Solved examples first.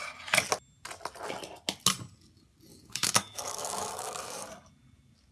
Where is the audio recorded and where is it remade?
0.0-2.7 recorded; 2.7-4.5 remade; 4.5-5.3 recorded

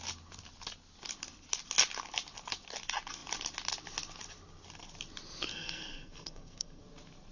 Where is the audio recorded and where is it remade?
0.0-5.5 recorded; 5.5-6.8 remade; 6.8-7.3 recorded

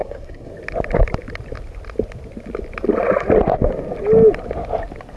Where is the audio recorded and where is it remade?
0.0-0.5 remade; 0.5-5.2 recorded

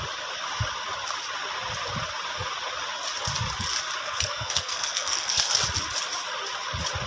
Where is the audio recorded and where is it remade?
0.0-4.0 recorded; 4.0-5.5 remade; 5.5-7.1 recorded

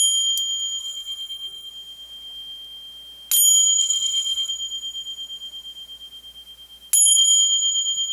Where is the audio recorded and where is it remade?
0.0-0.8 recorded; 0.8-1.7 remade; 1.7-3.8 recorded; 3.8-4.5 remade; 4.5-8.1 recorded

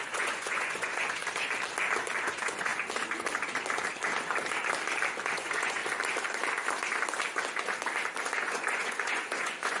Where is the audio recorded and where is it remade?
0.0-1.2 remade; 1.2-2.2 recorded; 2.2-2.7 remade; 2.7-5.3 recorded; 5.3-5.8 remade; 5.8-8.4 recorded; 8.4-9.8 remade

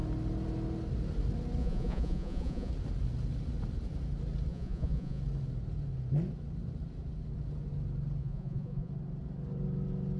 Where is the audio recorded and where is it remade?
0.0-1.6 recorded; 1.6-2.7 remade; 2.7-4.5 recorded; 4.5-5.2 remade; 5.2-8.2 recorded; 8.2-8.9 remade; 8.9-10.2 recorded

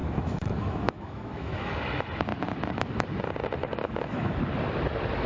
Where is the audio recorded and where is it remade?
0.0-1.7 remade; 1.7-3.6 recorded; 3.6-4.4 remade; 4.4-5.3 recorded